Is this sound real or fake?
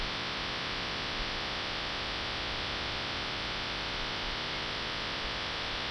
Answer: real